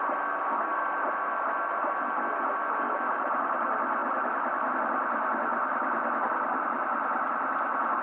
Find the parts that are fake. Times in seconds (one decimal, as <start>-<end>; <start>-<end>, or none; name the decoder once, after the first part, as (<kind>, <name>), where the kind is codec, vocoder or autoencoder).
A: none